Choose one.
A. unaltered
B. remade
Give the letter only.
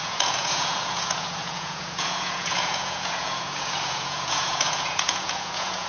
B